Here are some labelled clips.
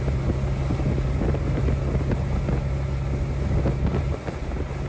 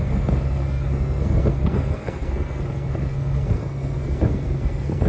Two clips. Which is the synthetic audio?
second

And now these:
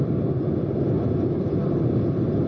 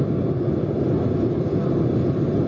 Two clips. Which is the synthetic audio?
first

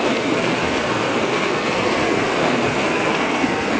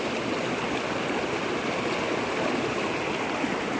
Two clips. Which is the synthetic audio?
first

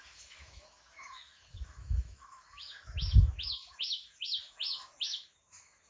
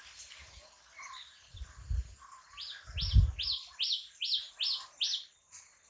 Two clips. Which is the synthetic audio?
first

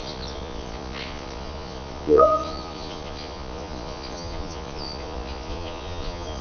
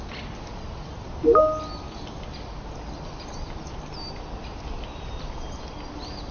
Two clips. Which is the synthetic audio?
first